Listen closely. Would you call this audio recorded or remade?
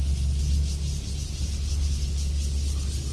recorded